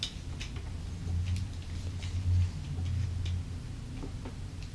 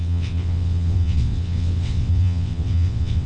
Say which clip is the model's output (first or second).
second